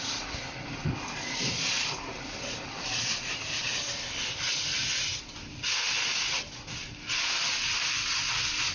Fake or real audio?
real